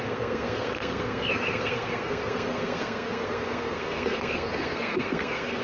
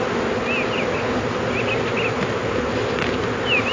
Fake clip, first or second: first